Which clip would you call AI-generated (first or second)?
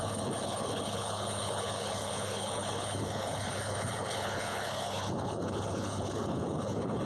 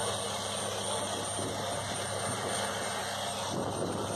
first